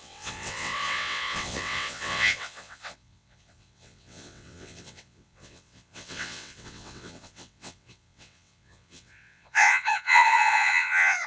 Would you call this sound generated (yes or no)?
yes